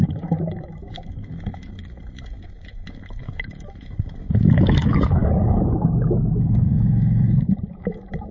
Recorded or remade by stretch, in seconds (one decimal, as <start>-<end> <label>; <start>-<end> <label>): 0.0-5.2 remade; 5.2-5.8 recorded; 5.8-8.3 remade